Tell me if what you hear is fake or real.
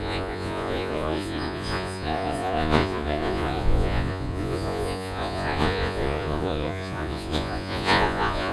fake